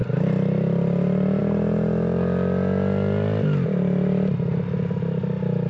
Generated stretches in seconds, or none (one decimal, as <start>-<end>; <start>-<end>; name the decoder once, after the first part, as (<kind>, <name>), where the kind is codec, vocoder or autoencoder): none